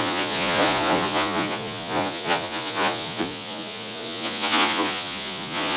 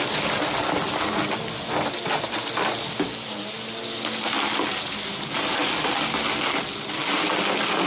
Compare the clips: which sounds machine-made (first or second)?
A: first